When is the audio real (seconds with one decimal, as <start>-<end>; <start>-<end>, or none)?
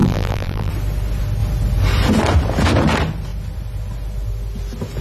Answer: 0.7-5.0